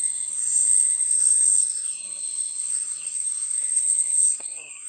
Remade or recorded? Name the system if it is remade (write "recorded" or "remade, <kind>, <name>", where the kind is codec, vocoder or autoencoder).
remade, codec, SNAC